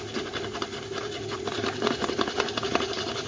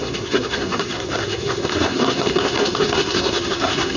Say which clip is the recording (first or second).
first